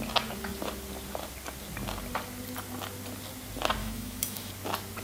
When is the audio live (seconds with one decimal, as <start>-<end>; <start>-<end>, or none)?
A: 0.0-3.8; 4.5-5.0